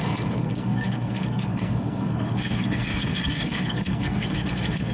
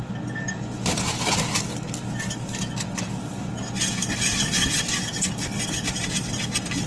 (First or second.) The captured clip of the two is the second